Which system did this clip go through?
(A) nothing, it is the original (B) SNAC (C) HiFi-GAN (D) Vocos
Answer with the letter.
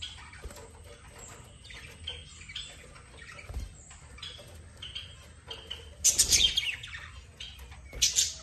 A